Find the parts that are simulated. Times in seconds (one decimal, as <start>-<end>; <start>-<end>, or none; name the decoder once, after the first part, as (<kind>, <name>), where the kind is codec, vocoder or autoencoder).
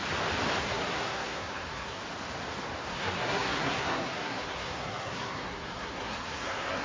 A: 0.6-2.0 (codec, SNAC); 2.9-6.8